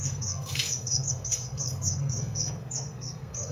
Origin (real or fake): fake